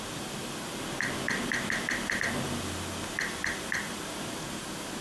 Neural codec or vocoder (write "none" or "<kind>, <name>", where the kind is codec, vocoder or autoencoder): none